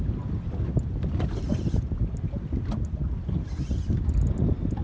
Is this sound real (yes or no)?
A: yes